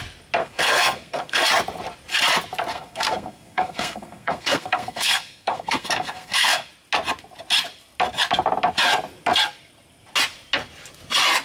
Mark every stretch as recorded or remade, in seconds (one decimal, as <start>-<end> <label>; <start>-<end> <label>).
0.0-0.4 recorded; 0.4-1.4 remade; 1.4-2.7 recorded; 2.7-6.7 remade; 6.7-11.4 recorded